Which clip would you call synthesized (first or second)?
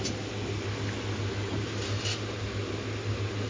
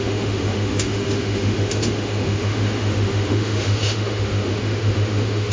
second